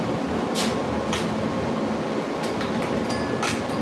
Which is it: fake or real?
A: real